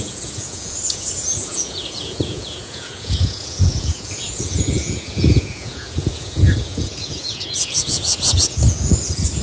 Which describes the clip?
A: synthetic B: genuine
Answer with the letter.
A